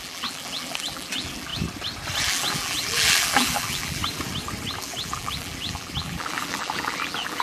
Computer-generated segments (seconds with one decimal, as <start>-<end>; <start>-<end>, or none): 0.0-1.5; 2.2-4.0; 4.8-7.4